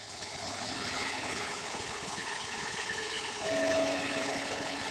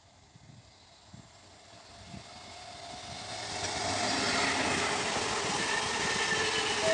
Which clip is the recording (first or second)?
second